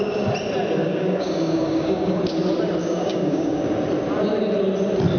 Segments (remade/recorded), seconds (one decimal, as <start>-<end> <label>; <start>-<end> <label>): 0.0-0.8 recorded; 0.8-2.2 remade; 2.2-2.8 recorded; 2.8-3.6 remade; 3.6-5.2 recorded